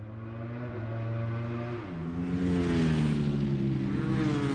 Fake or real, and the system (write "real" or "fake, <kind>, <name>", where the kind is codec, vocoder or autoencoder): real